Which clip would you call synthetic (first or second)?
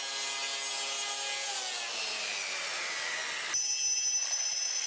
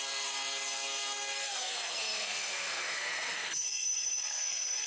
second